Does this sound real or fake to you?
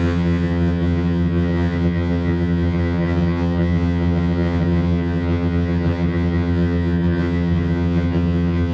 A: fake